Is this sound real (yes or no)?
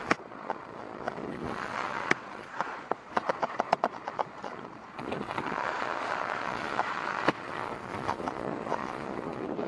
no